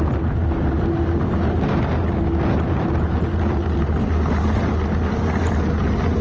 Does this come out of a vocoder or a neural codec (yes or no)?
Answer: no